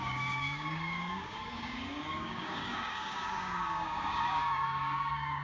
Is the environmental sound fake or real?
fake